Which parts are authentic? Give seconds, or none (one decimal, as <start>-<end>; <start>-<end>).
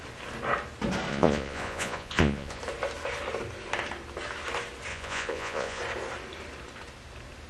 0.0-1.1; 2.6-4.9; 5.8-7.5